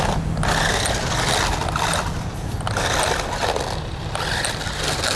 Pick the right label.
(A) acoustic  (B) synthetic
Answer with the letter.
A